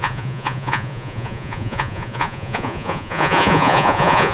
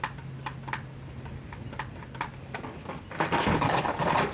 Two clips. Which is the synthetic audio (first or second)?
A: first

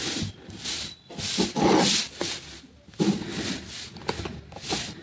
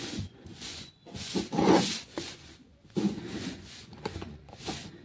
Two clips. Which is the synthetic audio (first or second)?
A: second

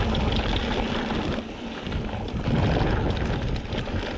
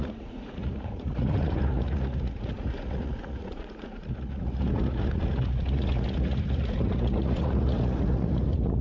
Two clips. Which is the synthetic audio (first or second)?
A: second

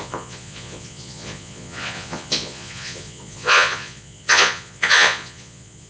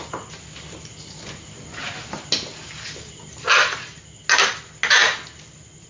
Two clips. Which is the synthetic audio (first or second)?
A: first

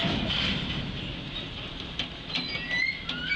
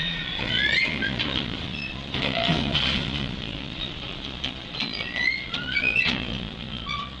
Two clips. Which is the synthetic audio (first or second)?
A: second